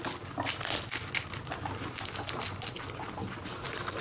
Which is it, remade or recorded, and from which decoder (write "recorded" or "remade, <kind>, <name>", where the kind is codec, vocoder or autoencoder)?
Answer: recorded